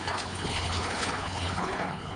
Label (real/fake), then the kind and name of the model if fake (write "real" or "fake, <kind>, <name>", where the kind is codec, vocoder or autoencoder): fake, codec, HILCodec